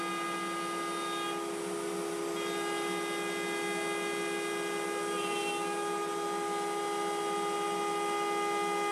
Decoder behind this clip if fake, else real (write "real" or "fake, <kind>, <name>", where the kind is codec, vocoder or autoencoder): real